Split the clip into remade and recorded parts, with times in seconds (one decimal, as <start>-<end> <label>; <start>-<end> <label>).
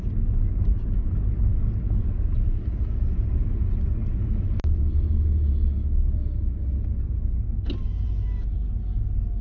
0.0-9.4 recorded